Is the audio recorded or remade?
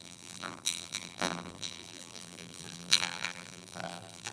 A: remade